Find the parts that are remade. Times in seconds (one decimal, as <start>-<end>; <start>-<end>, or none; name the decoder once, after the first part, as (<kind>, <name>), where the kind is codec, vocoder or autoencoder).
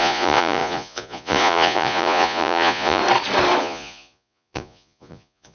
0.0-3.0 (vocoder, Vocos); 3.6-5.5